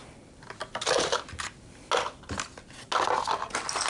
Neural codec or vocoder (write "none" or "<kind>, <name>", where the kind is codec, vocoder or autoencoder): none